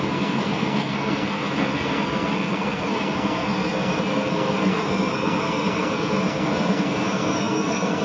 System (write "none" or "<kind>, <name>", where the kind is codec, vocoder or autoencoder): codec, SNAC